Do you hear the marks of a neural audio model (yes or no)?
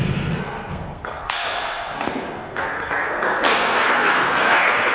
yes